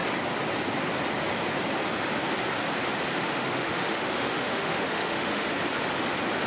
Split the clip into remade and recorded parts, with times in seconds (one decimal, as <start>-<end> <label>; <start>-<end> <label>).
0.0-3.1 recorded; 3.1-5.5 remade; 5.5-6.5 recorded